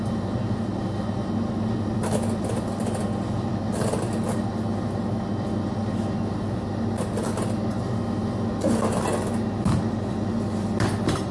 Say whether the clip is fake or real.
real